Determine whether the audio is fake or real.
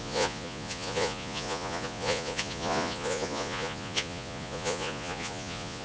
fake